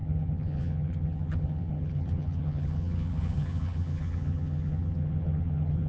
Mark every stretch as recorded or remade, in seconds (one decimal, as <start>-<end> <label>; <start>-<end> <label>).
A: 0.0-5.9 remade